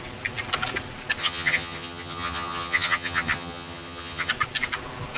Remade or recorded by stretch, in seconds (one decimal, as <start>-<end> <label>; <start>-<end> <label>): 0.0-1.2 recorded; 1.2-4.3 remade; 4.3-5.2 recorded